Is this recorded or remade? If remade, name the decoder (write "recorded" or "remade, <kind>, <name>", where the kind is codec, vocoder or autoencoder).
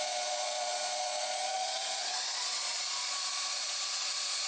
remade, vocoder, Vocos